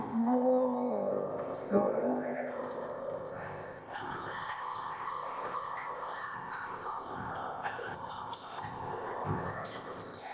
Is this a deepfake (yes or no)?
yes